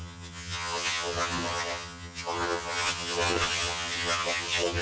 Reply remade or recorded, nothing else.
remade